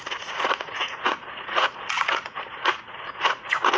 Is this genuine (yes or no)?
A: no